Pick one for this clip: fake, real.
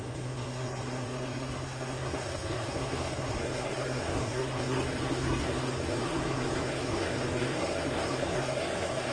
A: fake